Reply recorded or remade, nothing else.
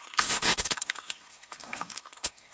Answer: remade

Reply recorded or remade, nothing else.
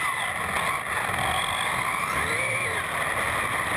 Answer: recorded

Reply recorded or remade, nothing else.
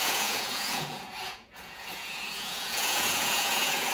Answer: remade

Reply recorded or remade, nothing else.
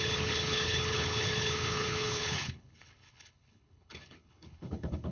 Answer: remade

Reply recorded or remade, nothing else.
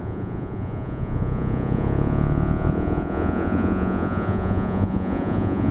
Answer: remade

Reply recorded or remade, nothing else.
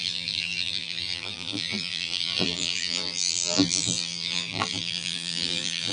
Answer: remade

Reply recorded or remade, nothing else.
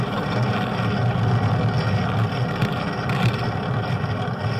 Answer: recorded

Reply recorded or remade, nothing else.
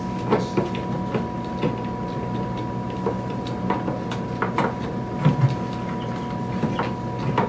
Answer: recorded